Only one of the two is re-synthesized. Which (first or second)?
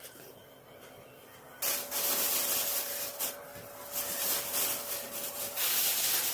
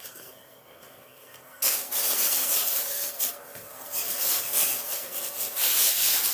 second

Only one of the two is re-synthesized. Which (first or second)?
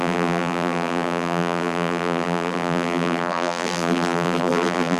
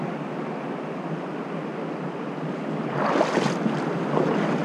first